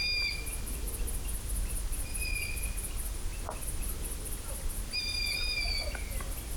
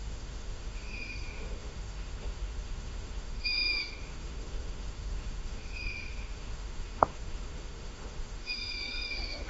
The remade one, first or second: second